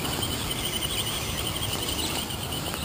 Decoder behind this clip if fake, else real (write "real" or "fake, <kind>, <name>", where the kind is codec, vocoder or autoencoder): real